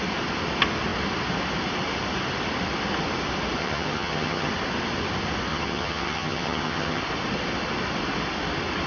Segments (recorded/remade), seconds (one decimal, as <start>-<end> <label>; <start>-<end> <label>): 0.0-3.6 recorded; 3.6-4.5 remade; 4.5-5.5 recorded; 5.5-7.0 remade; 7.0-8.9 recorded